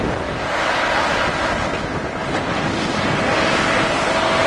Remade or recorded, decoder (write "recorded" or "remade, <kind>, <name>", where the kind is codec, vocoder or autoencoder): recorded